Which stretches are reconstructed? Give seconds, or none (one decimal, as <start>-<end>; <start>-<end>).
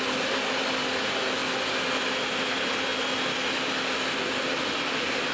none